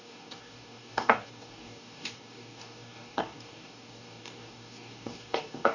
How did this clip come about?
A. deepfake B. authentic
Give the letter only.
A